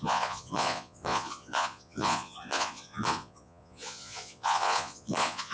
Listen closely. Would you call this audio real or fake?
fake